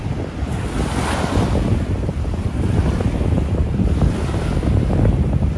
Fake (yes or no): no